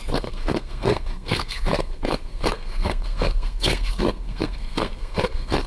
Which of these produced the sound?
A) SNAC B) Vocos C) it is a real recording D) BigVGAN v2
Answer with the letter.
A